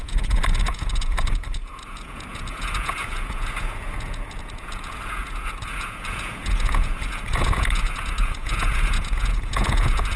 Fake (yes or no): yes